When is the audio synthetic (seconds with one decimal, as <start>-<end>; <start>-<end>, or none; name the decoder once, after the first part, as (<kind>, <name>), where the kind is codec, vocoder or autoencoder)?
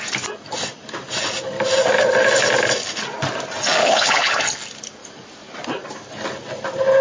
3.8-4.4 (codec, HILCodec)